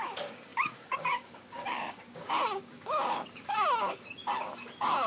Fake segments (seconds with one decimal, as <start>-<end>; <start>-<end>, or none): 0.0-5.1